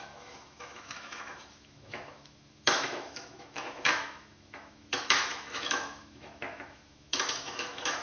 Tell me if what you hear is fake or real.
fake